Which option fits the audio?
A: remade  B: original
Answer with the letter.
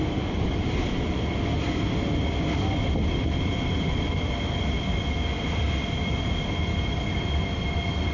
B